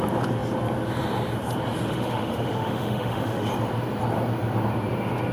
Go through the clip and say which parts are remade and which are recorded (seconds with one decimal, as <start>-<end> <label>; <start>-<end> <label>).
0.0-1.9 recorded; 1.9-3.5 remade; 3.5-5.3 recorded